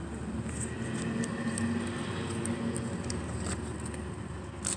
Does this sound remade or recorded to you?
recorded